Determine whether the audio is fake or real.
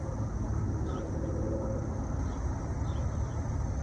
real